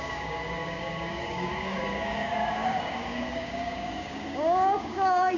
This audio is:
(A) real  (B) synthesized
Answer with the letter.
B